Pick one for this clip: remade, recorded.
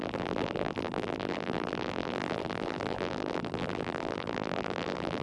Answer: remade